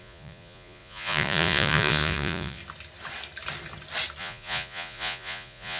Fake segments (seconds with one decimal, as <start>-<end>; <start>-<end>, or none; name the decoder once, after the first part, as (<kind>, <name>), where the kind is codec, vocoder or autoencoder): 0.0-2.6 (vocoder, Vocos); 4.2-5.8